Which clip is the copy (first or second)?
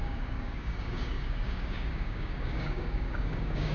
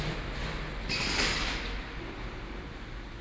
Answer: first